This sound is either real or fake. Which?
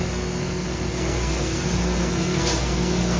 fake